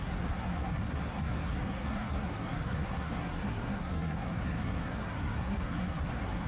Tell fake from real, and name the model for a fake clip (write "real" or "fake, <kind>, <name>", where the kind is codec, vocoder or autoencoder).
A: fake, codec, SNAC